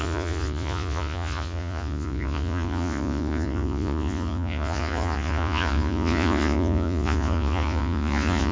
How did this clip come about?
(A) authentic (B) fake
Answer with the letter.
B